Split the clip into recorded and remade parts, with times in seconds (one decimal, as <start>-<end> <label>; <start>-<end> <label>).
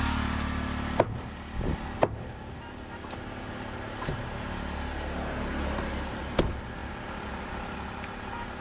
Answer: 0.0-8.6 recorded